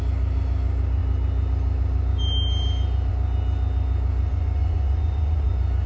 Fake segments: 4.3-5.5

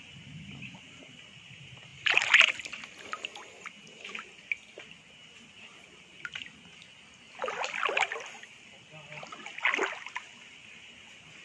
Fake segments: none

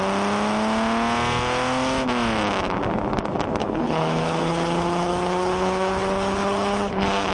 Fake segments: 3.6-7.3

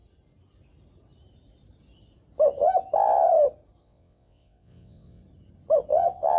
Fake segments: 3.8-5.2; 5.9-6.4

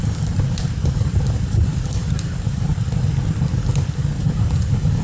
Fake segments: 0.0-2.7; 3.9-5.0